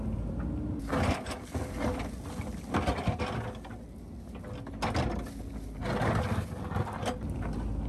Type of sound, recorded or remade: recorded